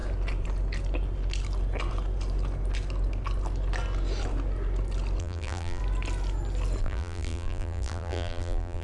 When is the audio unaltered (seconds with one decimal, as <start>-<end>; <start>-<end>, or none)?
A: 0.0-5.2; 5.8-6.8